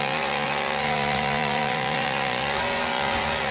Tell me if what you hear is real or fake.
fake